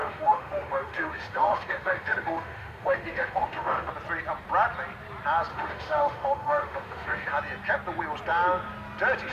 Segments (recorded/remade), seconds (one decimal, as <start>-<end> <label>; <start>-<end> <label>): 0.0-3.9 remade; 3.9-5.5 recorded; 5.5-7.3 remade; 7.3-9.3 recorded